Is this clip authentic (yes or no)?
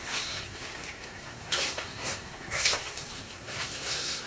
no